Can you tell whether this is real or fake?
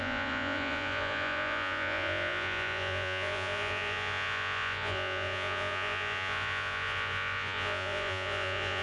fake